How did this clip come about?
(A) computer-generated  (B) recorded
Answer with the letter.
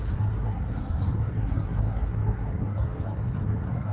A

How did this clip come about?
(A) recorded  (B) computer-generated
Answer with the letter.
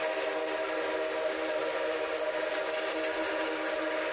A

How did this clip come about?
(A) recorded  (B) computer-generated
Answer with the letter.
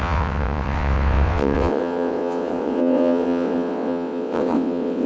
B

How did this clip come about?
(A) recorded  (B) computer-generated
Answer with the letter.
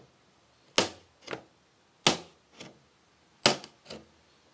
A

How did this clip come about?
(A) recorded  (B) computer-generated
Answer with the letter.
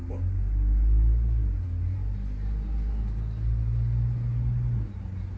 A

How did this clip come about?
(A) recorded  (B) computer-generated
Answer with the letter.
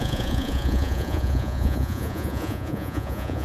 B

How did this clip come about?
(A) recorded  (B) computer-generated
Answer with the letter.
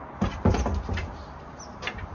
A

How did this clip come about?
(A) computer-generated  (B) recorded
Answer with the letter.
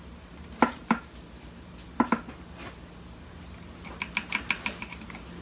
B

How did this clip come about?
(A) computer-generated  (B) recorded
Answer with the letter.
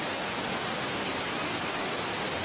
B